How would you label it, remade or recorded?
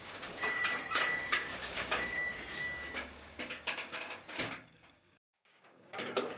remade